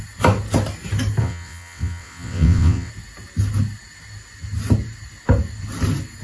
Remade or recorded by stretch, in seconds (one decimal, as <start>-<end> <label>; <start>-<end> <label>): 0.0-1.2 recorded; 1.2-2.9 remade; 2.9-6.2 recorded

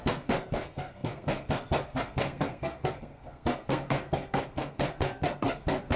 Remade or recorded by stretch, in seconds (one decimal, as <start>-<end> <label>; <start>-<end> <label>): 0.0-6.0 remade